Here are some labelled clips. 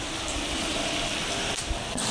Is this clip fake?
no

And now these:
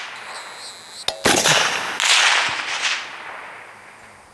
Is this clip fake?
no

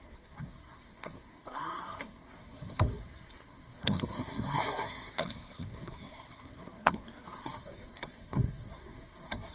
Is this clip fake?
yes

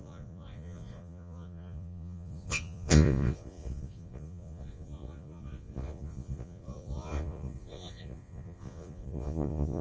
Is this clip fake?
yes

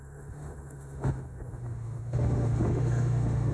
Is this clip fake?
yes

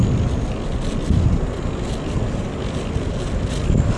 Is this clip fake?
no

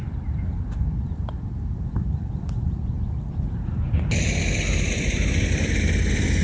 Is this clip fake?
yes